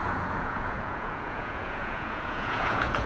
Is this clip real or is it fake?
fake